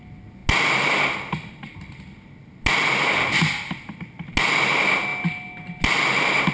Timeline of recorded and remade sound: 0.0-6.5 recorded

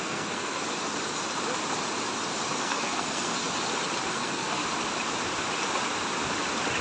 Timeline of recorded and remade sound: 0.0-0.6 remade; 0.6-2.6 recorded; 2.6-3.4 remade; 3.4-4.1 recorded; 4.1-4.6 remade; 4.6-6.8 recorded

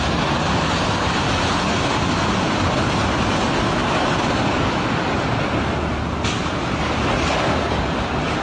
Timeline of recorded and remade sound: 0.0-8.4 recorded

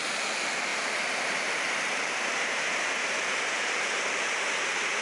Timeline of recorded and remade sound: 0.0-0.7 recorded; 0.7-3.7 remade; 3.7-5.0 recorded

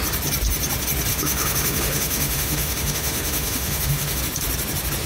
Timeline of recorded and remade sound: 0.0-1.1 recorded; 1.1-4.2 remade; 4.2-5.1 recorded

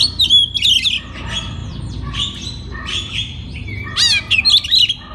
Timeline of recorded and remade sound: 0.0-5.1 recorded

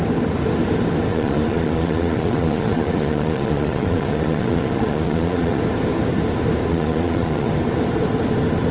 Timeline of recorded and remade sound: 0.0-1.1 recorded; 1.1-5.6 remade; 5.6-6.7 recorded; 6.7-7.5 remade; 7.5-8.7 recorded

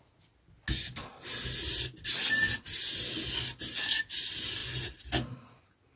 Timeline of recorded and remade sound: 0.0-6.0 recorded